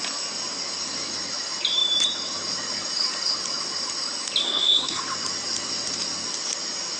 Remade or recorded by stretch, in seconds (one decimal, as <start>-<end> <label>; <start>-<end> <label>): 0.0-4.4 recorded; 4.4-5.0 remade; 5.0-7.0 recorded